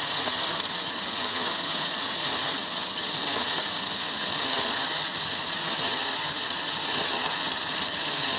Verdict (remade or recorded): remade